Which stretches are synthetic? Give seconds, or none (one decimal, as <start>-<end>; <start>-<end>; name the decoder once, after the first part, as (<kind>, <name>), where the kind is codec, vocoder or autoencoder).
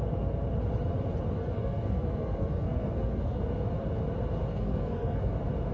1.4-3.4 (codec, SNAC); 4.5-5.3